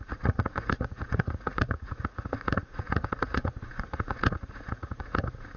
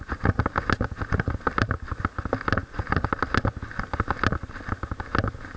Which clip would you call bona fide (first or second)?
second